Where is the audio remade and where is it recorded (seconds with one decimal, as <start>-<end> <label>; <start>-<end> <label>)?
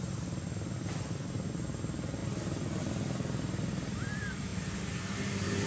0.0-5.7 recorded